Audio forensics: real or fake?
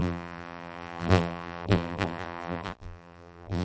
fake